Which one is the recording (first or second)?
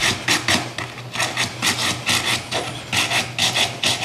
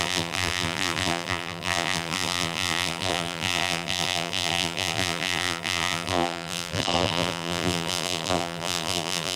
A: first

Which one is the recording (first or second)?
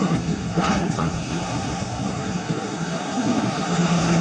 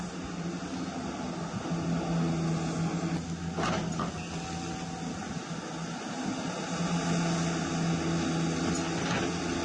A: second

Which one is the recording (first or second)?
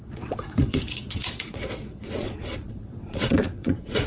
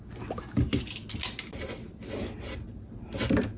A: second